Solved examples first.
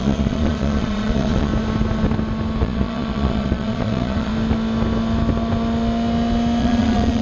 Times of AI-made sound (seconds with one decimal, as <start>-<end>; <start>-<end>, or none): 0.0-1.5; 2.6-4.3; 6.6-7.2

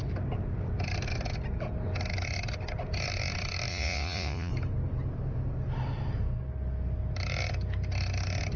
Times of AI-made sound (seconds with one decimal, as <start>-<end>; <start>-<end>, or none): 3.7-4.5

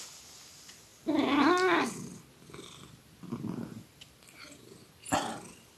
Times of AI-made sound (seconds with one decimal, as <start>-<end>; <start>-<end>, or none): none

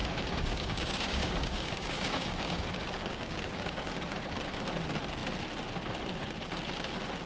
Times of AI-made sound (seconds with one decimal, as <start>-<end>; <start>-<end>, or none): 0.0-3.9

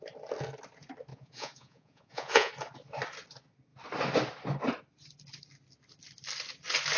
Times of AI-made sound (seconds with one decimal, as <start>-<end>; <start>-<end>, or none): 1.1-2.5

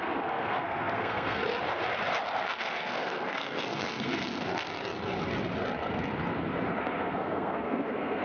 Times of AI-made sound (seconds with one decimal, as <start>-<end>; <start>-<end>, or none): 0.0-1.4; 2.4-4.7; 6.8-8.2

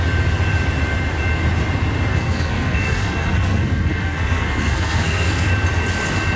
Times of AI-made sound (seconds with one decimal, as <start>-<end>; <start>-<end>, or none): 2.1-5.5